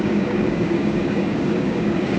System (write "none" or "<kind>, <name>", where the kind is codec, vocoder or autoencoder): codec, DAC